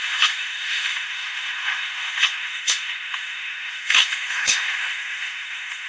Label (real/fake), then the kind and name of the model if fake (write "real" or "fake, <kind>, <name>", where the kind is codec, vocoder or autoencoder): fake, autoencoder, DAC-VAE